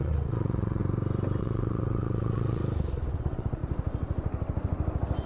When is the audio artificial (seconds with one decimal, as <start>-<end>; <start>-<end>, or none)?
0.0-0.8; 1.4-2.6; 3.1-3.6